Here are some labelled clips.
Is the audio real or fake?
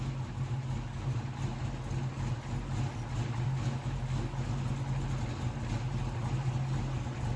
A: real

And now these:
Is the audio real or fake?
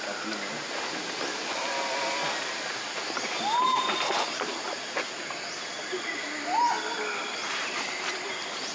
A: real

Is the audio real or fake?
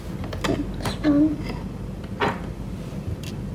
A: real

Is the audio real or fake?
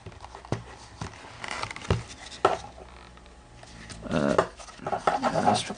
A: real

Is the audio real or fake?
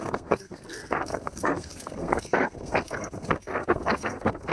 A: fake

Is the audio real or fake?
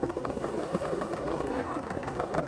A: fake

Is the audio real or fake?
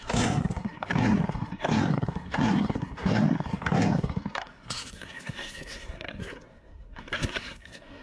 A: fake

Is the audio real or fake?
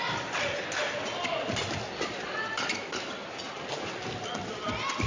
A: real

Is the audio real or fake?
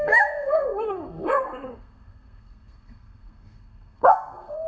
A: fake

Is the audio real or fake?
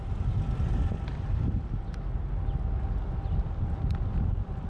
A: real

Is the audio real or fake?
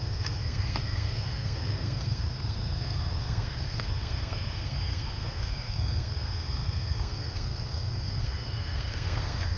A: fake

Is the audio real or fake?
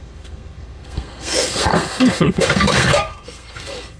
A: fake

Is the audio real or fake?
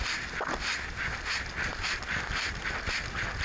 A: real